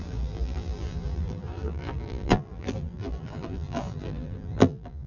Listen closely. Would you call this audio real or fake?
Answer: fake